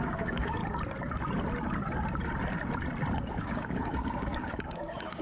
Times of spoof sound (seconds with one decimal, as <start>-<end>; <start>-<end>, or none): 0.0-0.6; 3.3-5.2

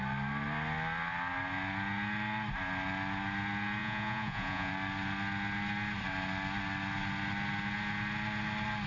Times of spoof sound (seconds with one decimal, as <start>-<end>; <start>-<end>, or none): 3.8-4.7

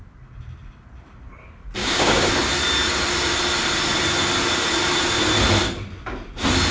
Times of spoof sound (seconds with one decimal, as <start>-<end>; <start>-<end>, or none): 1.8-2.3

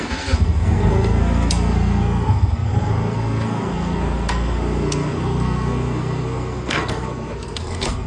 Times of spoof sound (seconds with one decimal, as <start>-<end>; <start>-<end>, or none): 0.0-8.1

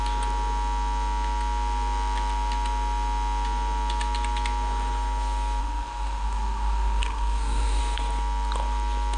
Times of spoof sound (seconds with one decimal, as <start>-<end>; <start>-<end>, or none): 5.6-7.8